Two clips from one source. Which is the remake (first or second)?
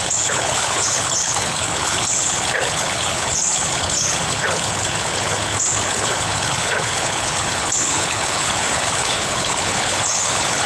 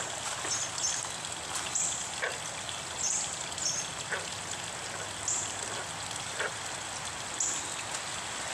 first